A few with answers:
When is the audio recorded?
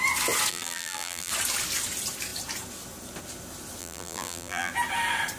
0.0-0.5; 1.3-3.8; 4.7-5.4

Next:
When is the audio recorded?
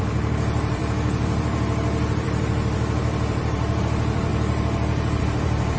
4.3-5.2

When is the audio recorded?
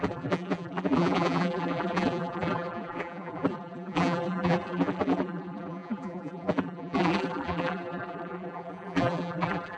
none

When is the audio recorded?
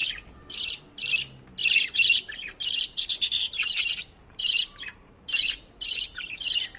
0.8-1.6; 5.7-6.8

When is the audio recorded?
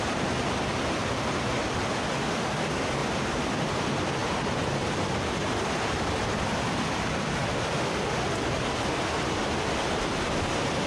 0.0-3.0; 3.5-4.2; 4.9-10.9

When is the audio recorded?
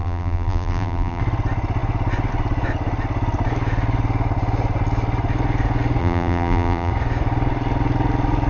1.2-6.0; 6.9-8.5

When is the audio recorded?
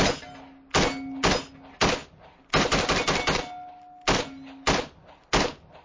0.0-5.8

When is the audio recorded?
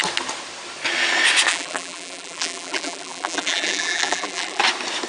0.0-1.5; 4.6-5.1